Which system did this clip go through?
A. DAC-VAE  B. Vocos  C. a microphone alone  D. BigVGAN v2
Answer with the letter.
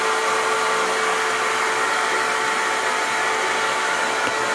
C